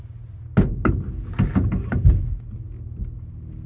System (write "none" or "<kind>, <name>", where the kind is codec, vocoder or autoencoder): none